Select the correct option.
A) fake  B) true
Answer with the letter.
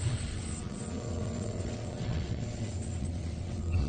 A